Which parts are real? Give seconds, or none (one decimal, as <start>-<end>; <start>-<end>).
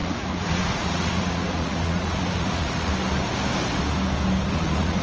2.9-4.5